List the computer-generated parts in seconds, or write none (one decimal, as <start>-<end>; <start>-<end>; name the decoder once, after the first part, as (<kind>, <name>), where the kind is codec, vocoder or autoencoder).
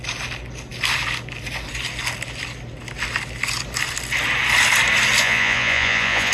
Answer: 5.2-6.3 (vocoder, Vocos)